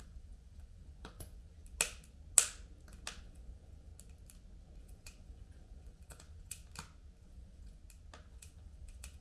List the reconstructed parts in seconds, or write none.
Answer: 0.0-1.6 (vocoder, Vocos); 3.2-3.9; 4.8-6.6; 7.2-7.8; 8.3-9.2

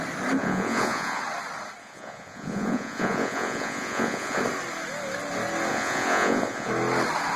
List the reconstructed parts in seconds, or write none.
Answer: 0.4-1.2 (vocoder, Vocos); 1.8-4.4; 5.7-6.7

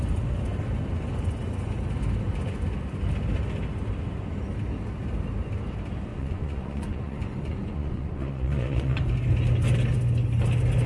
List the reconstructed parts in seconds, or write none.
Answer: 6.1-9.0 (vocoder, Vocos)

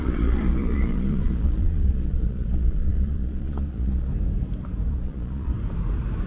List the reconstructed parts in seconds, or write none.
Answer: 0.0-4.1 (vocoder, Vocos); 4.9-5.5